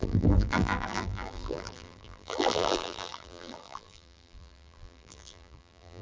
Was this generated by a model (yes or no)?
yes